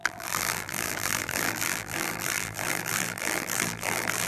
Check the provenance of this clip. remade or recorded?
remade